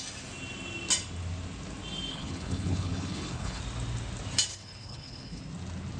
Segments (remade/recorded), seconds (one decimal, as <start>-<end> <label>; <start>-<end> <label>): 0.0-2.1 recorded; 2.1-3.6 remade; 3.6-4.5 recorded; 4.5-5.4 remade; 5.4-6.0 recorded